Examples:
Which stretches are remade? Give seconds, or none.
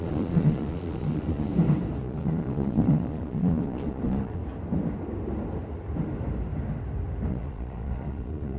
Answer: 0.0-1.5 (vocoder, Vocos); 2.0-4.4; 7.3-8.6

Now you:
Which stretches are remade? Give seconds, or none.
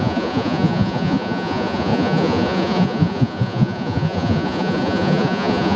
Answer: 0.0-5.8 (vocoder, Vocos)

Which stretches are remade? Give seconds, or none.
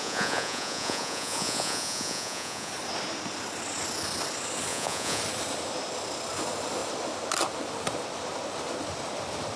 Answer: 0.0-2.7 (vocoder, Vocos); 4.7-5.2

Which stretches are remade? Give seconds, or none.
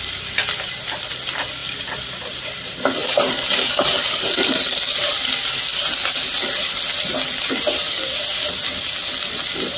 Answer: none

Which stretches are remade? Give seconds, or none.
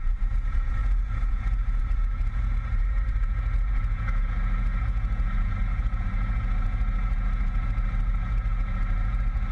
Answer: 0.0-9.5 (vocoder, Vocos)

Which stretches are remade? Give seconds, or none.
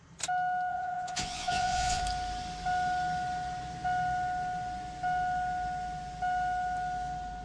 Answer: 0.7-2.0 (vocoder, Vocos)